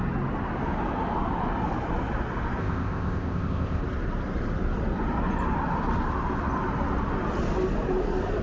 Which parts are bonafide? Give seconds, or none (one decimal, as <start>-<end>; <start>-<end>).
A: 0.0-2.6; 3.8-8.4